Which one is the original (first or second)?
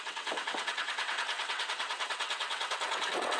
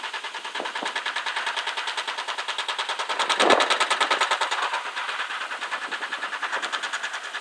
second